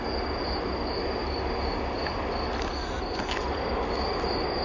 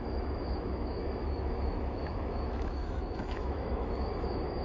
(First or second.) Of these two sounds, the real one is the first